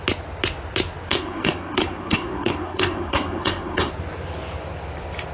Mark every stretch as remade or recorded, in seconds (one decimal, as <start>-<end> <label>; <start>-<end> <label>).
0.0-1.1 recorded; 1.1-3.9 remade; 3.9-5.3 recorded